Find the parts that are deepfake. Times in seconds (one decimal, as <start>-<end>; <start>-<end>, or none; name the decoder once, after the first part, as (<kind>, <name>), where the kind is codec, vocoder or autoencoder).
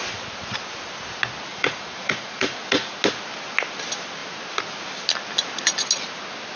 1.5-2.9 (vocoder, Vocos)